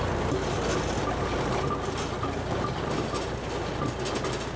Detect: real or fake real